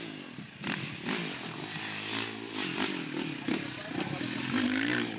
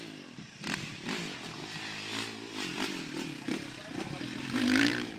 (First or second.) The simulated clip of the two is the second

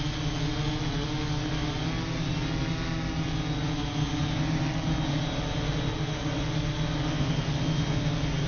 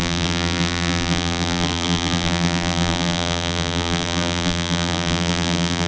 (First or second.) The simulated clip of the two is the second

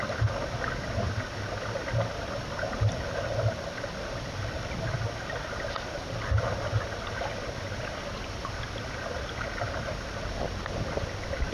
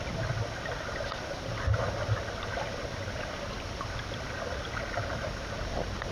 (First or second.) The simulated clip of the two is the second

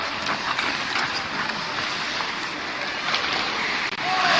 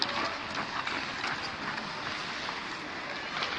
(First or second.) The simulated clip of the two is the first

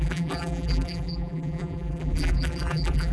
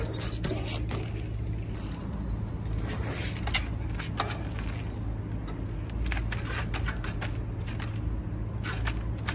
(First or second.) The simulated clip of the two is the first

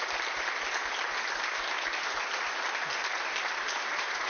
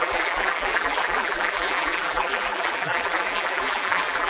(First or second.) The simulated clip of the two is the second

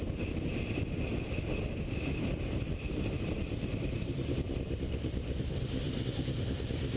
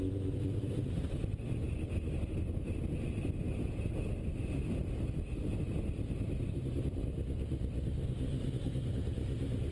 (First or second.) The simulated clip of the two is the first